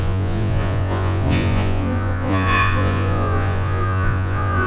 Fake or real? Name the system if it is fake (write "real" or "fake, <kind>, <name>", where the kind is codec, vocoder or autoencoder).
fake, vocoder, Vocos